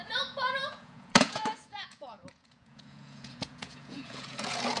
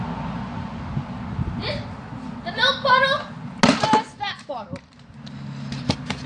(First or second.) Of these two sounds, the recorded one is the second